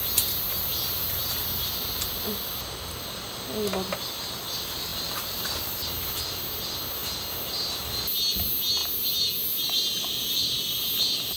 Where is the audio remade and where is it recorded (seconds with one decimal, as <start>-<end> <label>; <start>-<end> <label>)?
0.0-4.9 recorded; 4.9-5.7 remade; 5.7-11.4 recorded